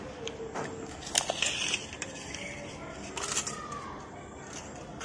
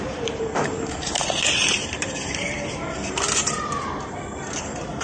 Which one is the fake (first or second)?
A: second